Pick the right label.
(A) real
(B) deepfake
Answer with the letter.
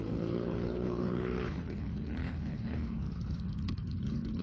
B